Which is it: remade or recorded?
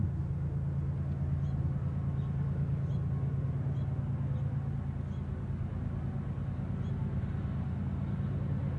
recorded